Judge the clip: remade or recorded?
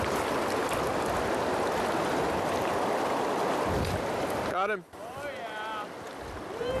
recorded